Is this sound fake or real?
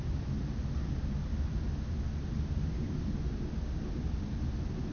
real